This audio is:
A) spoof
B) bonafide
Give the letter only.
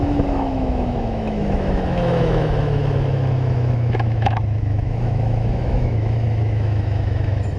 A